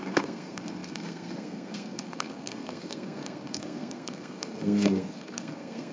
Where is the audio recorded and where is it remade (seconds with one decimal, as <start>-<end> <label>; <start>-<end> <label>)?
0.0-5.9 remade